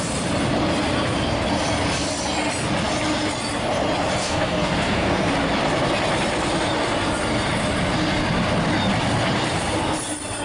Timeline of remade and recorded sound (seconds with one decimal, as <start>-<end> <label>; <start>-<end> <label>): 0.0-4.2 recorded; 4.2-5.3 remade; 5.3-10.4 recorded